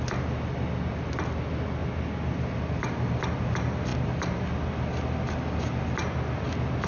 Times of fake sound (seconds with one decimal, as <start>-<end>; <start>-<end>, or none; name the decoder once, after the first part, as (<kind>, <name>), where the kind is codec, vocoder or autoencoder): none